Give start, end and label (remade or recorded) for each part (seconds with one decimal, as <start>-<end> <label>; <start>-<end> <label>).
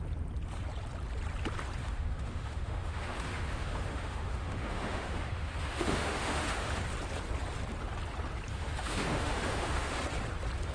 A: 0.0-1.8 recorded; 1.8-6.8 remade; 6.8-8.5 recorded; 8.5-10.0 remade; 10.0-10.7 recorded